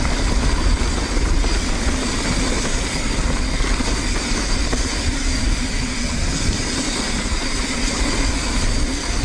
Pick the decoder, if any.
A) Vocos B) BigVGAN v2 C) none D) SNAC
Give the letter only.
C